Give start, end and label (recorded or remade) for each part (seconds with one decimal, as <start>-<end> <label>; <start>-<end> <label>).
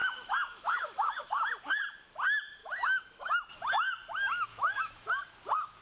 0.0-1.5 remade; 1.5-2.6 recorded; 2.6-3.3 remade; 3.3-4.5 recorded; 4.5-5.1 remade; 5.1-5.8 recorded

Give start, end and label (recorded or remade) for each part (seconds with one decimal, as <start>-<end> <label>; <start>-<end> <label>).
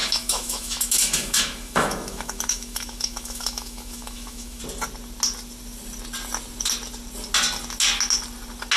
0.0-4.6 remade; 4.6-8.8 recorded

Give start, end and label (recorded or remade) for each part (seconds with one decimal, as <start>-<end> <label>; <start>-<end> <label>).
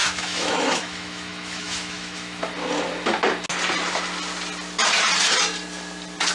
0.0-2.4 remade; 2.4-6.3 recorded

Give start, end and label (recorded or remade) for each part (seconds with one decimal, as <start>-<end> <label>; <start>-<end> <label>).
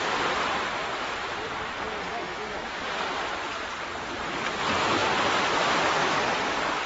0.0-2.2 recorded; 2.2-2.7 remade; 2.7-6.9 recorded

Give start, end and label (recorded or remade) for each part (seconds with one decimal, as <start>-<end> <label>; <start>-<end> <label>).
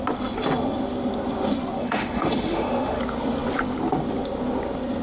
0.0-1.8 recorded; 1.8-3.0 remade; 3.0-5.0 recorded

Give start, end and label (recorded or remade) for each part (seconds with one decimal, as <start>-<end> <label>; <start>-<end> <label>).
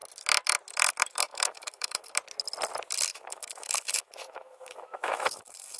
0.0-1.3 recorded; 1.3-2.1 remade; 2.1-3.1 recorded; 3.1-5.8 remade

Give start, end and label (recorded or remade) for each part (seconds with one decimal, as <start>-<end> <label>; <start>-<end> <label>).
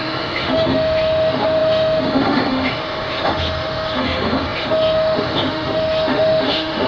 0.0-6.9 remade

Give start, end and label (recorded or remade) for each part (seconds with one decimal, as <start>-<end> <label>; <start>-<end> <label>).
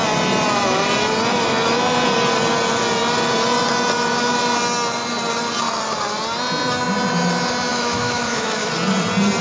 0.0-7.7 recorded; 7.7-8.7 remade; 8.7-9.4 recorded